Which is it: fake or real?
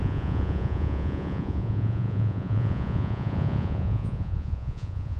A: fake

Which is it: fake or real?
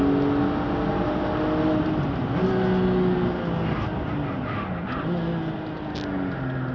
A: real